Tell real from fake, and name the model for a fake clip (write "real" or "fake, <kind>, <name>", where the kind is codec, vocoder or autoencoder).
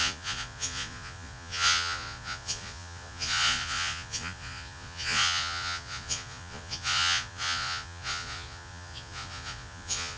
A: fake, vocoder, Vocos